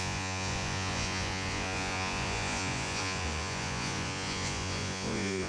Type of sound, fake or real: fake